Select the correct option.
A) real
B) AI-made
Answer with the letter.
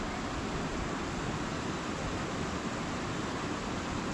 A